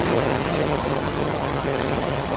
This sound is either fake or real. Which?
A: fake